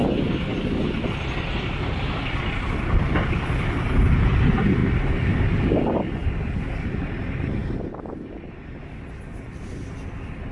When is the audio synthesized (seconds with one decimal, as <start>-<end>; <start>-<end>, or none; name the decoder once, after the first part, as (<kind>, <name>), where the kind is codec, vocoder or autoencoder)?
1.5-6.2 (vocoder, BigVGAN v2); 6.9-7.6; 8.8-10.5